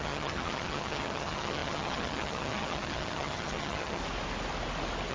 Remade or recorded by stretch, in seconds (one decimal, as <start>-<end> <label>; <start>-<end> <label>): 0.0-4.0 remade; 4.0-5.1 recorded